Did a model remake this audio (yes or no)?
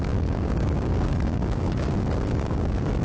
yes